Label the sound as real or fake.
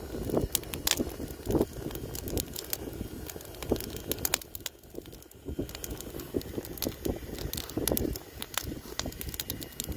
real